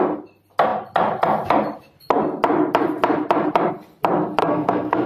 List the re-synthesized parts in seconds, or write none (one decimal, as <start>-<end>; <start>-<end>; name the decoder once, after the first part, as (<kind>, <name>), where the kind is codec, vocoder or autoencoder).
4.4-5.1 (codec, SNAC)